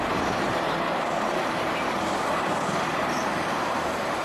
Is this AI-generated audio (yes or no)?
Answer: yes